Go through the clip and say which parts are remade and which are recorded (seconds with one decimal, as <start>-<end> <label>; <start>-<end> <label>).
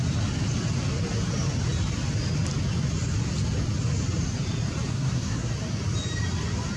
0.0-4.9 recorded; 4.9-5.5 remade; 5.5-6.8 recorded